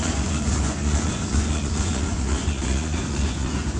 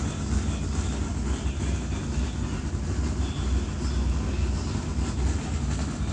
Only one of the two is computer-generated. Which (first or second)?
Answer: first